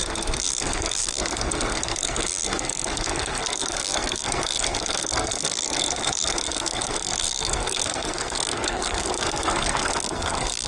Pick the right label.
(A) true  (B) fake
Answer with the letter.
B